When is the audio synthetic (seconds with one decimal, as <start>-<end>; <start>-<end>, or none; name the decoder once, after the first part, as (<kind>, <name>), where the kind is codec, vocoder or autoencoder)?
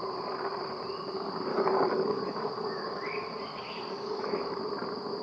1.5-4.6 (codec, DAC)